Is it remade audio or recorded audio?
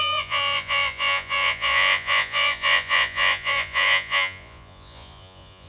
remade